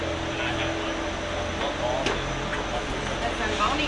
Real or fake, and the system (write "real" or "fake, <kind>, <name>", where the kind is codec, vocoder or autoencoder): real